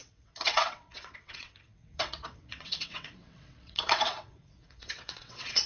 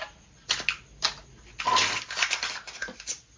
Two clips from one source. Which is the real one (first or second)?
second